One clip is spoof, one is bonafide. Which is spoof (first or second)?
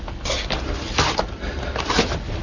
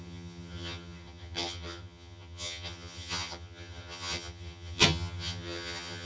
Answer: second